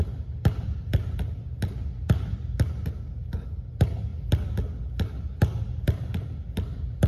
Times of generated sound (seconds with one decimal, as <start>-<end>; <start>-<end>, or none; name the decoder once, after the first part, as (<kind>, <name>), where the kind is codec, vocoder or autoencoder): none